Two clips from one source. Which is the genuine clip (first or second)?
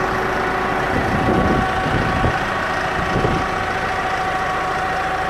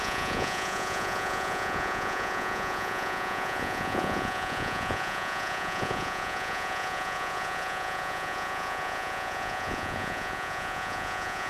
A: first